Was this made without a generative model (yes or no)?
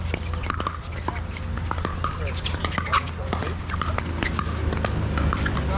yes